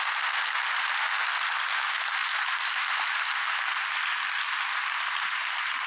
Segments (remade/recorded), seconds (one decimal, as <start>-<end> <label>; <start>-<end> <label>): 0.0-2.2 recorded; 2.2-4.1 remade; 4.1-5.9 recorded